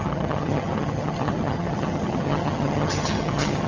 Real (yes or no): no